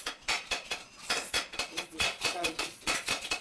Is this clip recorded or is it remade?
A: remade